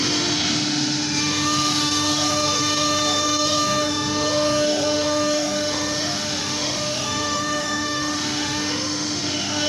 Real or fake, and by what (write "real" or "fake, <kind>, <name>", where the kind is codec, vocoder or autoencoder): fake, autoencoder, DAC-VAE